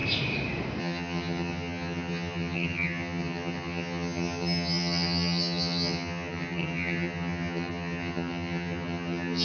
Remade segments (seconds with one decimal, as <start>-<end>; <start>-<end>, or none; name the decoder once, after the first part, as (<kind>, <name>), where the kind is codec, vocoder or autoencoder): 0.8-9.4 (vocoder, HiFi-GAN)